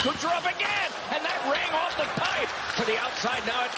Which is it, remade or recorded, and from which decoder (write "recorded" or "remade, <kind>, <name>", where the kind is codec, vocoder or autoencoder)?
recorded